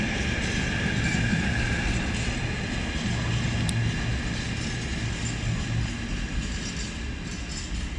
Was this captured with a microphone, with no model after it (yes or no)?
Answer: yes